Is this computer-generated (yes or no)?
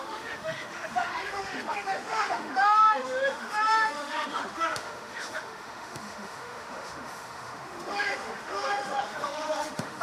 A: yes